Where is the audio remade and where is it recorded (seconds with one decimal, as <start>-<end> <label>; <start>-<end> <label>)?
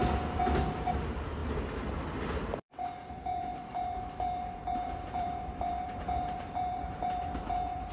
0.0-1.4 remade; 1.4-2.3 recorded; 2.3-7.9 remade